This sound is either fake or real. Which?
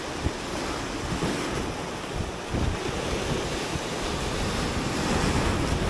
real